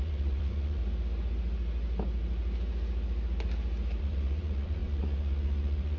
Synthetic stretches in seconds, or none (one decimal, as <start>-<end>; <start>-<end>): 0.0-0.8; 4.0-6.0